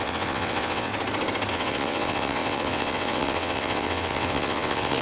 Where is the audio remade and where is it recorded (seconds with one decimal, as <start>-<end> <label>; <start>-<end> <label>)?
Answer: 0.0-0.9 remade; 0.9-1.5 recorded; 1.5-5.0 remade